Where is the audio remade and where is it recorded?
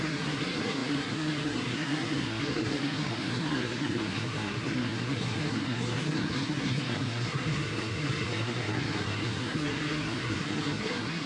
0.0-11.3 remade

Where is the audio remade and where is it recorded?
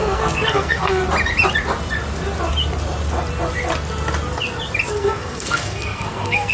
0.0-1.0 remade; 1.0-4.9 recorded; 4.9-6.5 remade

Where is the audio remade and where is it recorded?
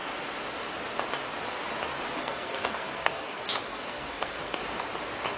0.0-2.2 recorded; 2.2-4.6 remade; 4.6-5.4 recorded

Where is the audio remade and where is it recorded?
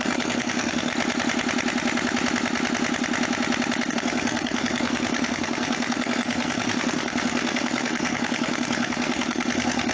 0.0-0.9 remade; 0.9-3.9 recorded; 3.9-9.9 remade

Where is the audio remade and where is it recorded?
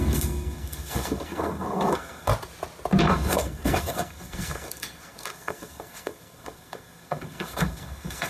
0.0-2.3 remade; 2.3-3.0 recorded; 3.0-8.3 remade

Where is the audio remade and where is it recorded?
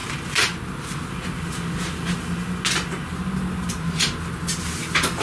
0.0-5.2 recorded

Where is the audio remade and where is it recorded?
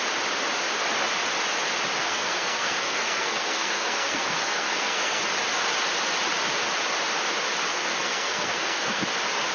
0.0-2.0 recorded; 2.0-5.2 remade; 5.2-7.7 recorded; 7.7-9.0 remade; 9.0-9.5 recorded